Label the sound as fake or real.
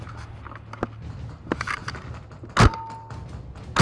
real